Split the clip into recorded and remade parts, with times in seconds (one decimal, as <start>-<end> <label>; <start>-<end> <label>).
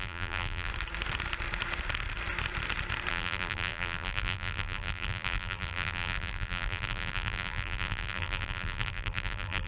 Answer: 0.0-0.7 remade; 0.7-3.1 recorded; 3.1-9.7 remade